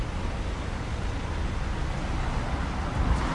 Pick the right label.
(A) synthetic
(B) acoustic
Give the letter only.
B